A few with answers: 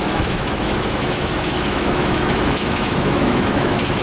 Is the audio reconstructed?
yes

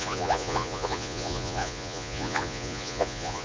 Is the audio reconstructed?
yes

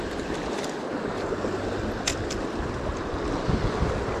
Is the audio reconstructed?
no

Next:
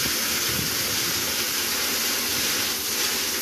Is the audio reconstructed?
no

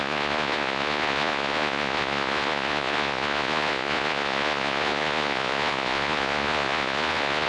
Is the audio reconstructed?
yes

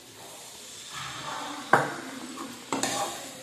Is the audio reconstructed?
no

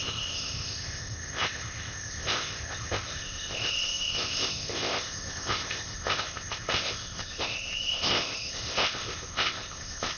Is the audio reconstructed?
yes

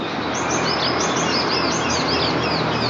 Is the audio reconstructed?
no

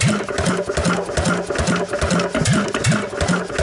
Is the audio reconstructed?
no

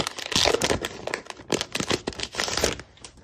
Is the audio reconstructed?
no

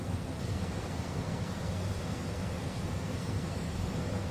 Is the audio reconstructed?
yes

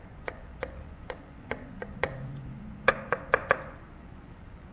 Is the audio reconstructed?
yes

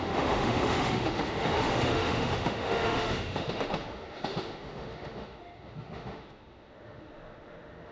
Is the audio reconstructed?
yes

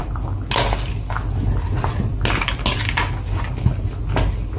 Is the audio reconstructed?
no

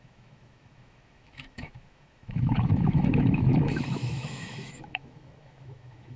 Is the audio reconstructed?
yes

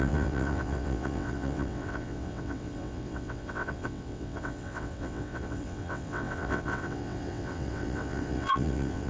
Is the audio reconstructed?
yes